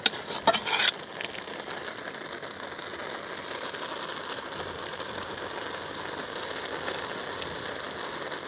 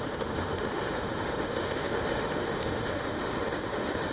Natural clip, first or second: first